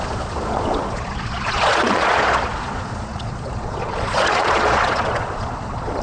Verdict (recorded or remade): remade